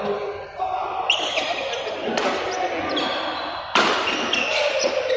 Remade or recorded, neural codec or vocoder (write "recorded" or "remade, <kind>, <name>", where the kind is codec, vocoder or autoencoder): recorded